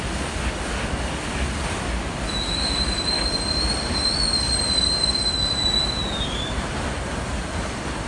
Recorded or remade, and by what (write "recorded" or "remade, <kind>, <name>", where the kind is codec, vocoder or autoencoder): remade, vocoder, BigVGAN v2